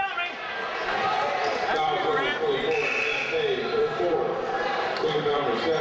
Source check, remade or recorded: remade